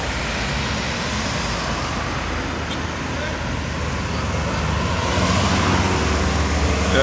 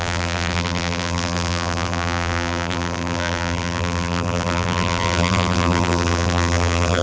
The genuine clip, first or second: first